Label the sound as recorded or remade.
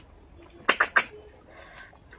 recorded